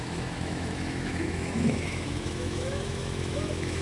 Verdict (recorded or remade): remade